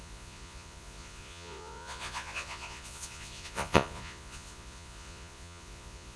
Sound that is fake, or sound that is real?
fake